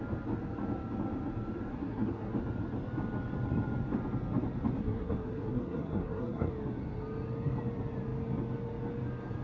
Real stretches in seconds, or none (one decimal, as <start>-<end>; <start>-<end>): 0.0-1.7; 2.3-4.8; 6.5-9.4